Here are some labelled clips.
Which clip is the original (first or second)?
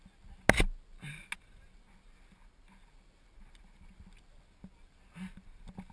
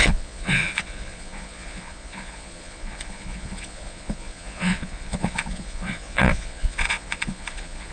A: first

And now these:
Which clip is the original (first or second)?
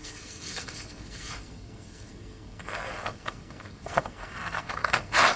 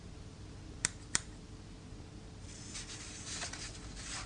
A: second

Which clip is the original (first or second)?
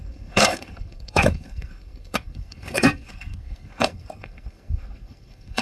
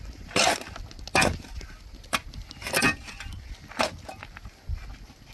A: second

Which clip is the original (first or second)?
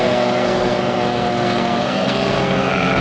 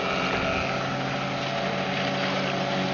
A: second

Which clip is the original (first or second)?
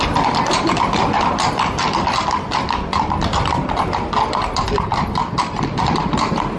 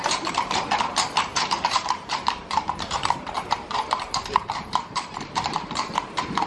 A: first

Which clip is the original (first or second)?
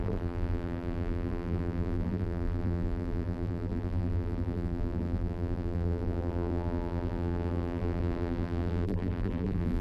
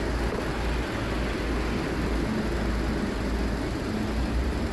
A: second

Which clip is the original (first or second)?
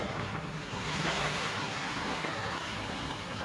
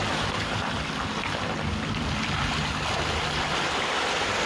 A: second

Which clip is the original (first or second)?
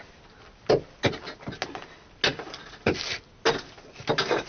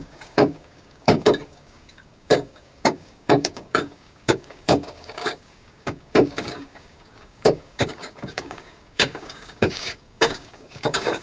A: first